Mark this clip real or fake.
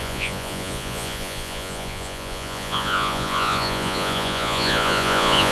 fake